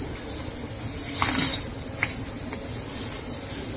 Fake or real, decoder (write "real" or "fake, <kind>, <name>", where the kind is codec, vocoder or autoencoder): real